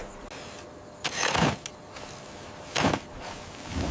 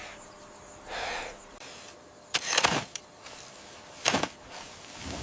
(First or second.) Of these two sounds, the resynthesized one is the second